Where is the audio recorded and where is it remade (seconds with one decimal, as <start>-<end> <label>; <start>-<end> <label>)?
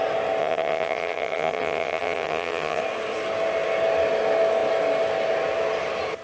0.0-0.4 recorded; 0.4-2.8 remade; 2.8-6.2 recorded